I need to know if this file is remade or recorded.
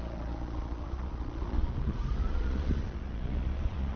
remade